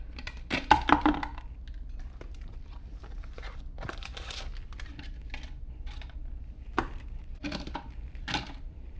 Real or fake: fake